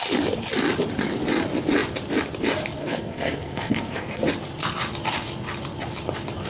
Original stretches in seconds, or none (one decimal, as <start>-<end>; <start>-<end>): 0.0-2.8; 4.2-6.5